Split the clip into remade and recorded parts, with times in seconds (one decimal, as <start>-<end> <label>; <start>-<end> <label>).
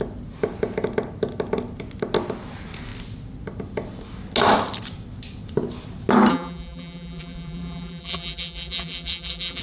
0.0-6.3 recorded; 6.3-9.6 remade